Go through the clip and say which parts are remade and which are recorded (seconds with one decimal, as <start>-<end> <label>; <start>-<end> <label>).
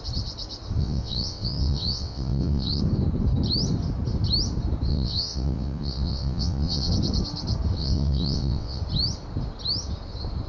0.0-0.8 recorded; 0.8-2.8 remade; 2.8-4.9 recorded; 4.9-6.9 remade; 6.9-7.8 recorded; 7.8-8.8 remade; 8.8-10.5 recorded